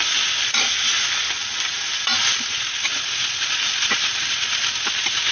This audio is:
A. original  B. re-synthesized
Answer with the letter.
A